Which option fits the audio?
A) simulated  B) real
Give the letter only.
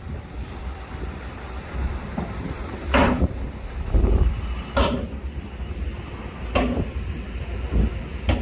A